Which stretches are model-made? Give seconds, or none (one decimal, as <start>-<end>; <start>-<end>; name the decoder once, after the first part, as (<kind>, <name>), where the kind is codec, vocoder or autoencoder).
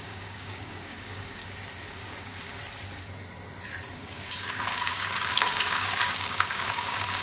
0.0-1.4 (codec, DAC); 1.9-2.6; 3.9-7.2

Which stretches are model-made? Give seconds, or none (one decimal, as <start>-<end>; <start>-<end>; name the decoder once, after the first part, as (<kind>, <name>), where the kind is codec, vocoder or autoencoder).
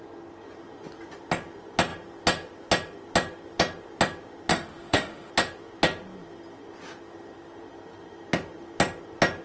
4.5-5.3 (autoencoder, DAC-VAE)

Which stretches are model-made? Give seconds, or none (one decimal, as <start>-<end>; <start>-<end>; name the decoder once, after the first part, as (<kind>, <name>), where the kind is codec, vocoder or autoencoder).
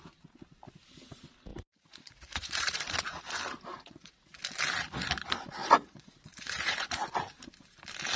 1.5-3.2 (vocoder, Vocos); 3.7-4.4; 5.6-7.1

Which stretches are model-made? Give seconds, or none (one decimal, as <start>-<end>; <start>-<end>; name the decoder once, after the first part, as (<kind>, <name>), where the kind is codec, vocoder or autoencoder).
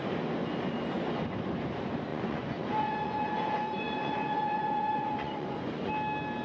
2.1-5.9 (vocoder, Vocos)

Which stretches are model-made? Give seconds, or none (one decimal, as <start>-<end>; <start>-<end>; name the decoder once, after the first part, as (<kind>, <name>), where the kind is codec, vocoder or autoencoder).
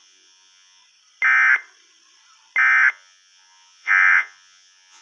0.0-0.8 (vocoder, Vocos); 2.9-5.0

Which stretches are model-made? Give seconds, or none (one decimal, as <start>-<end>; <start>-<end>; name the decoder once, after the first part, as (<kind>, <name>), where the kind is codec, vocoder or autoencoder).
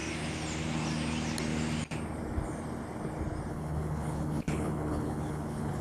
3.5-5.8 (codec, HILCodec)